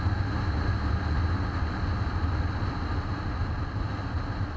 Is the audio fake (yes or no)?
no